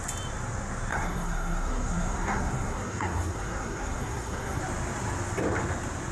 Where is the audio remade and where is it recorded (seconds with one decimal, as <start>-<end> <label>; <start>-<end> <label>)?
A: 0.0-0.9 recorded; 0.9-4.6 remade; 4.6-6.1 recorded